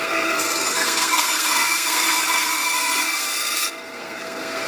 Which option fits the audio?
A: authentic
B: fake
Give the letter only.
B